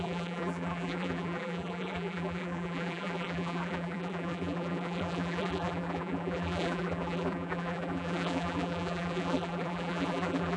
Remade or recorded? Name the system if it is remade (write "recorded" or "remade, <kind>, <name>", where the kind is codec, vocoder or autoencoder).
remade, vocoder, BigVGAN v2